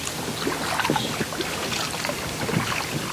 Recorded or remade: recorded